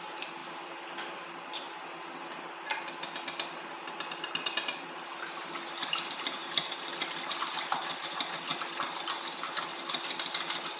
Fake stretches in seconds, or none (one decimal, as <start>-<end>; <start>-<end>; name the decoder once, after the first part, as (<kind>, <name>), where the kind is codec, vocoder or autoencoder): 6.4-7.2 (vocoder, BigVGAN v2)